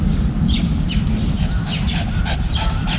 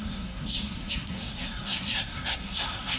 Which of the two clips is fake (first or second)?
second